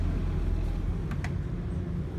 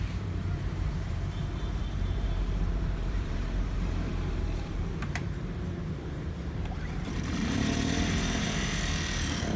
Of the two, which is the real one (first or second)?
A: first